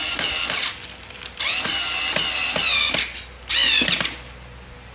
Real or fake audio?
real